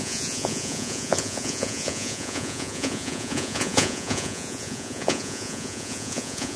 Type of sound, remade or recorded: remade